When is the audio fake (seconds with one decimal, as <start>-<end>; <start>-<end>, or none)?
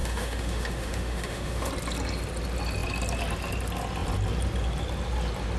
0.0-1.7